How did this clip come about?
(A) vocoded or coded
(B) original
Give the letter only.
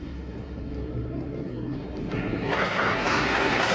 A